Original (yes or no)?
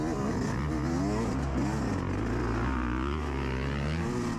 yes